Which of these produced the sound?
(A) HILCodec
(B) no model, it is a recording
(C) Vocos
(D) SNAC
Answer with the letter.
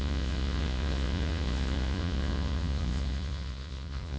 C